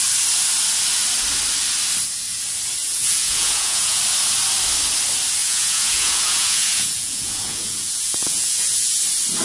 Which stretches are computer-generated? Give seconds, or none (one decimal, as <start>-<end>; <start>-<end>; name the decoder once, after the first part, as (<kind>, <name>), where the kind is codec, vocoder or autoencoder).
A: 2.8-4.0 (vocoder, Vocos); 5.4-9.0